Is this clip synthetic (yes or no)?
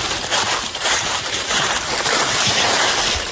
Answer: yes